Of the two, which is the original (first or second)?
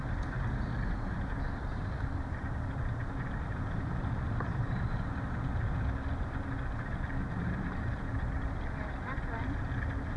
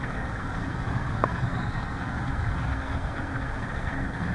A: first